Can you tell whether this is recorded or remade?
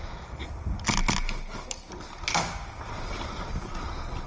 recorded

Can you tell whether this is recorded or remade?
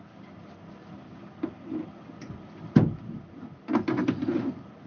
recorded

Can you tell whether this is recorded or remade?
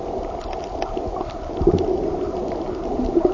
recorded